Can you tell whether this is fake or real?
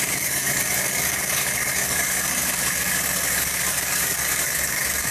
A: fake